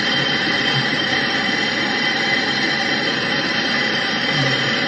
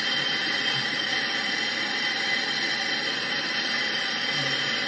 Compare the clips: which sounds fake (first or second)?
first